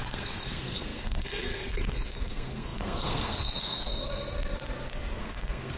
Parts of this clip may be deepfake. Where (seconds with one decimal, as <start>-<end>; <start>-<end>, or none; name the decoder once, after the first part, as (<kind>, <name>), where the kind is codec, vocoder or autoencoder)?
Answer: 0.0-3.9 (codec, SNAC); 5.2-5.8